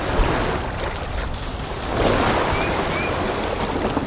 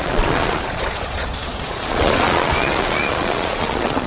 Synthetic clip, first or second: second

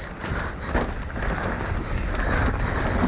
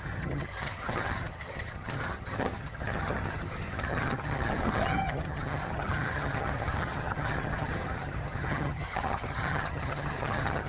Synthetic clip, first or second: second